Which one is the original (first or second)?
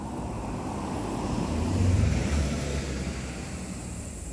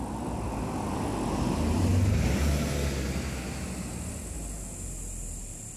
second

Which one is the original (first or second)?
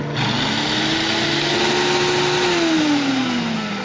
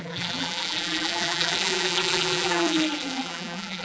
first